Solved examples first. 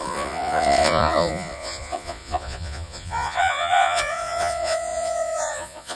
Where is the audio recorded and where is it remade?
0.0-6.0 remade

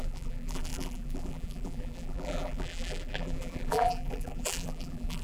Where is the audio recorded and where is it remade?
0.0-5.2 remade

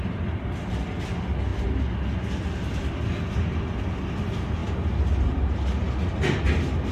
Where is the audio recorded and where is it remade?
0.0-6.9 recorded